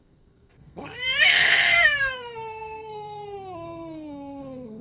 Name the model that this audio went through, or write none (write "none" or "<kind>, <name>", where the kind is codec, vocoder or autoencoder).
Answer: codec, SNAC